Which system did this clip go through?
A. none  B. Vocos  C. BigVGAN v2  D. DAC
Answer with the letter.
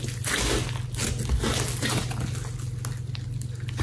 A